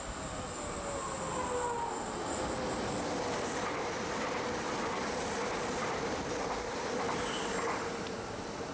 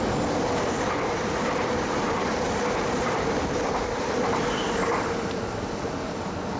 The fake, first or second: second